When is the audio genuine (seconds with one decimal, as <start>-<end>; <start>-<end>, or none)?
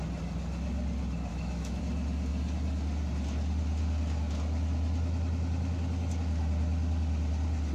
0.0-1.3; 1.8-7.7